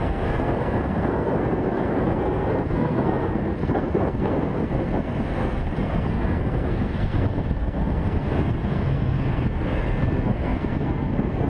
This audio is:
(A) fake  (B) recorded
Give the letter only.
A